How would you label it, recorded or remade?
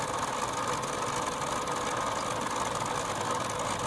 recorded